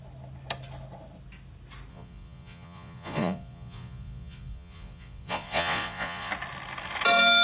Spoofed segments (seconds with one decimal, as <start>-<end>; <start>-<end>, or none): 1.9-6.3